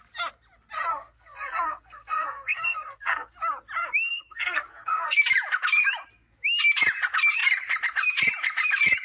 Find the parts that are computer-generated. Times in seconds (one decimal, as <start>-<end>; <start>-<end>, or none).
0.9-3.3; 4.1-5.2